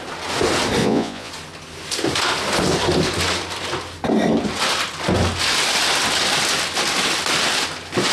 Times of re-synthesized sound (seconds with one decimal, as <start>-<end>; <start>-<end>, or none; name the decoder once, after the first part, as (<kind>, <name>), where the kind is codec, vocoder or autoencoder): 0.8-1.3 (vocoder, Vocos)